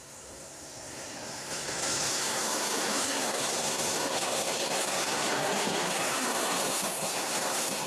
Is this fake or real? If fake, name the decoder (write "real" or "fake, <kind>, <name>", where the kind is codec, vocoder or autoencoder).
fake, codec, SNAC